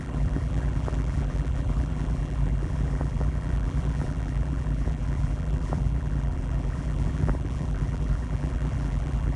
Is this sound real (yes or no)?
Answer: no